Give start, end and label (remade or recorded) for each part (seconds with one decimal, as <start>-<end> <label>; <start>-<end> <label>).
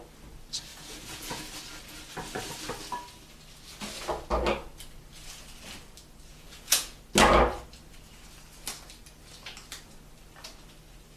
0.0-0.7 recorded; 0.7-1.4 remade; 1.4-6.3 recorded; 6.3-7.0 remade; 7.0-11.2 recorded